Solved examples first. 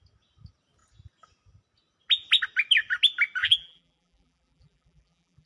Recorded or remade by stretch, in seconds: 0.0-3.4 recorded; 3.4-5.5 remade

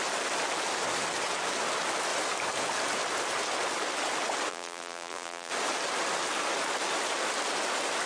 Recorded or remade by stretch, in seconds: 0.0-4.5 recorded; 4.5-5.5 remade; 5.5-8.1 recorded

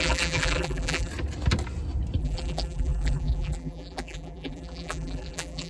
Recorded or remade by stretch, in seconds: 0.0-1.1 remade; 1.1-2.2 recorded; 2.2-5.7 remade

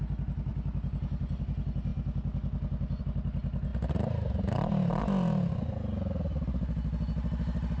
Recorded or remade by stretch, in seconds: 0.0-7.8 recorded

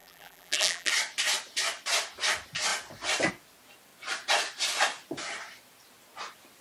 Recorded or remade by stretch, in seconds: 0.0-0.9 remade; 0.9-6.6 recorded

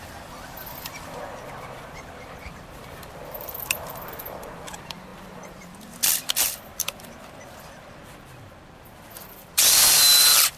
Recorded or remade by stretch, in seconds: 0.0-10.6 remade

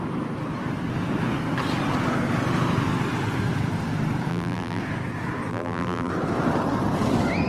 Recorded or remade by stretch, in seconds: 0.0-4.3 recorded; 4.3-4.8 remade; 4.8-5.5 recorded; 5.5-6.1 remade; 6.1-7.5 recorded